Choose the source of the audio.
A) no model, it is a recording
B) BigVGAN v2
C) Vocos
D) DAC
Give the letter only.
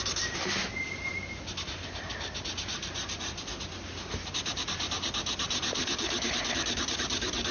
A